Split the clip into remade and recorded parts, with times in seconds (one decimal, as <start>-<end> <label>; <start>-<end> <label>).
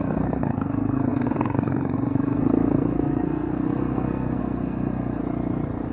0.0-5.2 remade; 5.2-5.9 recorded